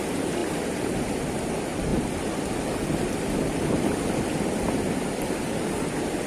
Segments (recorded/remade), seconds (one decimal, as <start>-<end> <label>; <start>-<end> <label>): 0.0-6.3 recorded